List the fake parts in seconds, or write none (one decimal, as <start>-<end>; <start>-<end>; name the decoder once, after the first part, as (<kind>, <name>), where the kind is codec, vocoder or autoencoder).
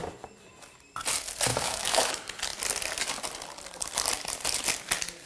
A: 1.5-2.1 (autoencoder, DAC-VAE)